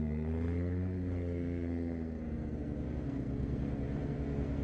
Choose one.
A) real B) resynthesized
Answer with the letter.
B